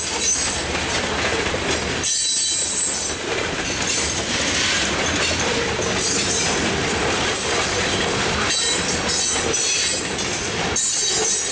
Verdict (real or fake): real